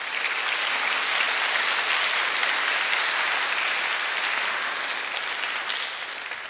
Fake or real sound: real